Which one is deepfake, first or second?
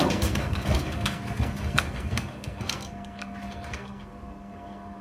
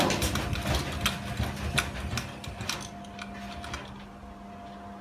first